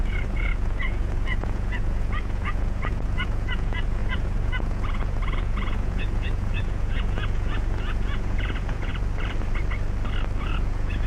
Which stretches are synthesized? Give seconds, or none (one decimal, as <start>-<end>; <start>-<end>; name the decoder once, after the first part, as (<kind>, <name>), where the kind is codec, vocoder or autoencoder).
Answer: 0.0-8.9 (vocoder, Vocos); 10.4-11.1